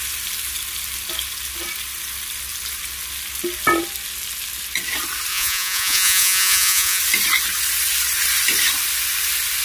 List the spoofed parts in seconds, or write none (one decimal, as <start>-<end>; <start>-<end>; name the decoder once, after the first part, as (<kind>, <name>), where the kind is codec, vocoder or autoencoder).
5.3-7.0 (vocoder, Vocos)